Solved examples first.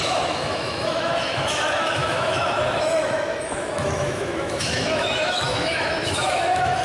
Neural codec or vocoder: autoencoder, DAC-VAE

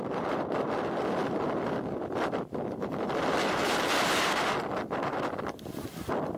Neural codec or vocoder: vocoder, BigVGAN v2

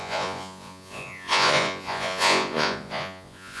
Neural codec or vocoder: vocoder, Vocos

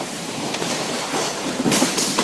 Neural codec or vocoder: vocoder, BigVGAN v2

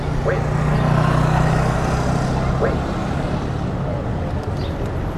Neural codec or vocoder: none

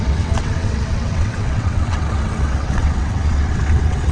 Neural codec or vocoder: vocoder, WaveNeXt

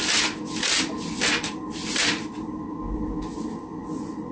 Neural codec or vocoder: none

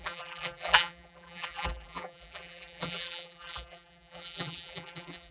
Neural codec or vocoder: vocoder, BigVGAN v2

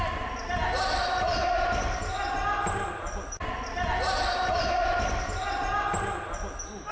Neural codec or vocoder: none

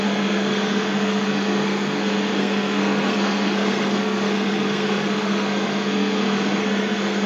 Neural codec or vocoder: codec, SNAC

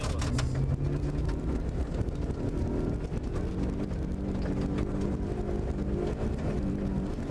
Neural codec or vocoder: none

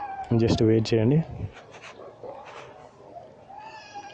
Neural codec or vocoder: none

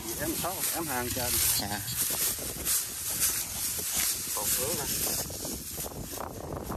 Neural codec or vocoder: none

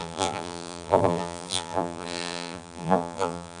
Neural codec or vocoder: vocoder, BigVGAN v2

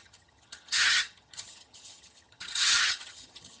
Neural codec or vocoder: vocoder, HiFi-GAN